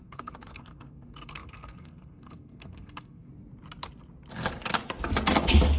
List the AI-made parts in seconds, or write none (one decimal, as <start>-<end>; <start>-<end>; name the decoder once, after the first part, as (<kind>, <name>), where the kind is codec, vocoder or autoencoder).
0.0-3.3 (codec, SNAC)